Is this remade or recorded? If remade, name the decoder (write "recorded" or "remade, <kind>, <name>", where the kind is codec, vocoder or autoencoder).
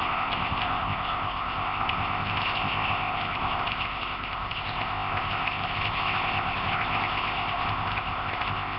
remade, codec, ZipCodec